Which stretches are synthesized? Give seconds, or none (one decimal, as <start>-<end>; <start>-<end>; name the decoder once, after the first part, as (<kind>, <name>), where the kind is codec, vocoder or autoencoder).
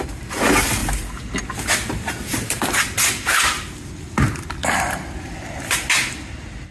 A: none